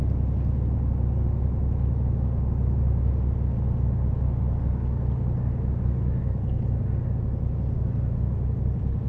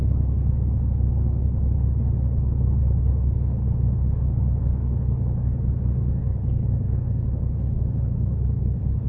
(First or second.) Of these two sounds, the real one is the first